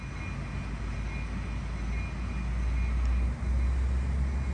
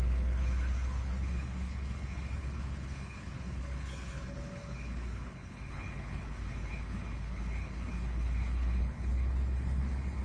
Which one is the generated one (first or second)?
second